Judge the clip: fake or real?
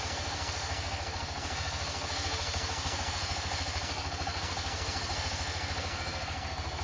fake